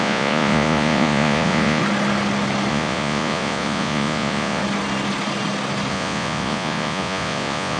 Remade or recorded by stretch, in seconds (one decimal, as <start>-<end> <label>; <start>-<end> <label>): 0.0-1.8 remade; 1.8-2.7 recorded; 2.7-4.6 remade; 4.6-5.9 recorded; 5.9-7.8 remade